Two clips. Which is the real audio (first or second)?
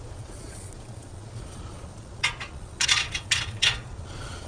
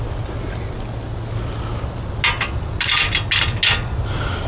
second